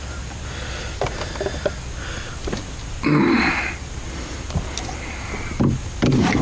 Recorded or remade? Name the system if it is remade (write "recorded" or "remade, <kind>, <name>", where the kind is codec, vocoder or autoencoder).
recorded